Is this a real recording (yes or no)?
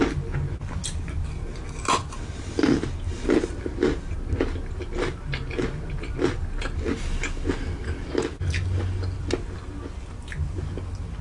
yes